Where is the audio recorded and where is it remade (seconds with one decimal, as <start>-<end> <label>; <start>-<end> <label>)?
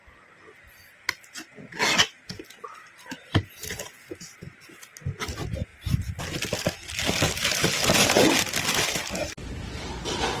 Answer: 0.0-2.8 recorded; 2.8-3.5 remade; 3.5-5.7 recorded; 5.7-6.2 remade; 6.2-7.4 recorded; 7.4-8.3 remade; 8.3-10.4 recorded